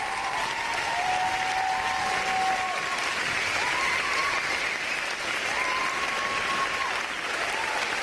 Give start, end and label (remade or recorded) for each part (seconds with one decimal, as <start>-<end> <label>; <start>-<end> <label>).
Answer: 0.0-8.0 recorded